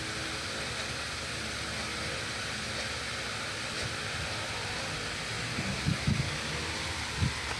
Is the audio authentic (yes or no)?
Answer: yes